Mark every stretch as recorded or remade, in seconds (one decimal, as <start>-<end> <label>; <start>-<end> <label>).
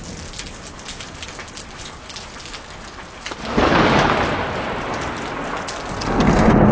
0.0-5.9 recorded; 5.9-6.7 remade